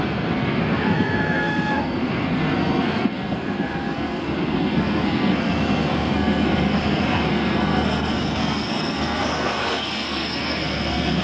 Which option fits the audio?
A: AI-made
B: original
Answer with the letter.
A